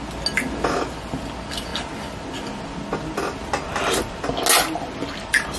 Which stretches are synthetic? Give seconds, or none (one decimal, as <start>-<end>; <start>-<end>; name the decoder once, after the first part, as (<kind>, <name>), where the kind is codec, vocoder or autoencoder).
none